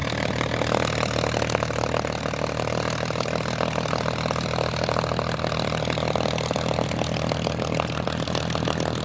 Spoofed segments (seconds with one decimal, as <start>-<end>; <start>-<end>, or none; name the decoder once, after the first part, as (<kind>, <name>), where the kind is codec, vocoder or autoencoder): none